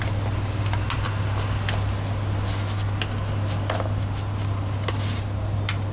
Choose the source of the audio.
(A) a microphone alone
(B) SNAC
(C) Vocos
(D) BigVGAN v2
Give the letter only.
A